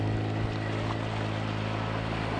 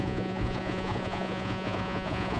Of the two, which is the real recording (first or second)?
first